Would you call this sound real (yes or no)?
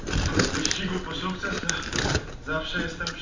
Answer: yes